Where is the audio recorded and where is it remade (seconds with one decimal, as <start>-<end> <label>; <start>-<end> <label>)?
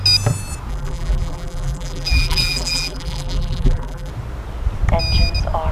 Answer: 0.0-0.7 recorded; 0.7-4.1 remade; 4.1-5.7 recorded